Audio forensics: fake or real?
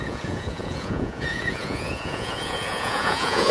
fake